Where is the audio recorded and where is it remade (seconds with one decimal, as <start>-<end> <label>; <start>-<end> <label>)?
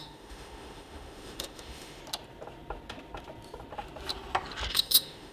0.0-2.0 remade; 2.0-4.7 recorded; 4.7-5.3 remade